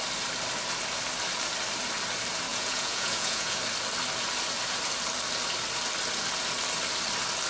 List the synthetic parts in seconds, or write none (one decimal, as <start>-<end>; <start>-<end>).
2.5-3.6